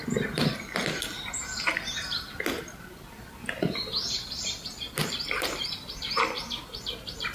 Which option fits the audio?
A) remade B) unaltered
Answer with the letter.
B